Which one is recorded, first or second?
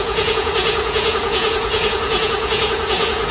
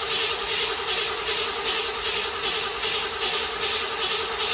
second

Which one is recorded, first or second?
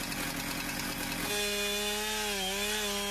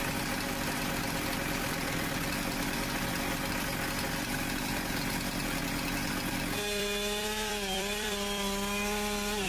first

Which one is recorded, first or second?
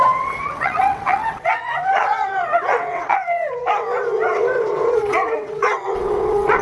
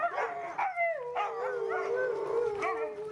second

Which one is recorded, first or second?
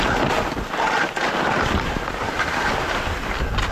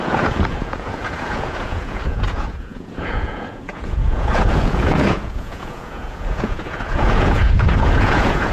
first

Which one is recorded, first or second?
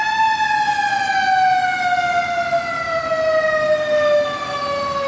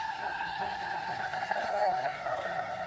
first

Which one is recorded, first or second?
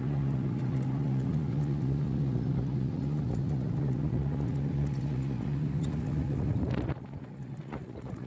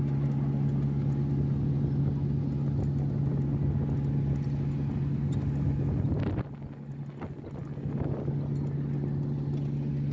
second